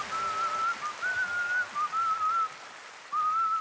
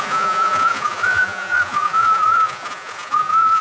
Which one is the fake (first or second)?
second